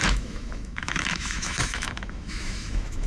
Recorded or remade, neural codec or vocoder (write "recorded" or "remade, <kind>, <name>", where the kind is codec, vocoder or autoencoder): remade, autoencoder, DAC-VAE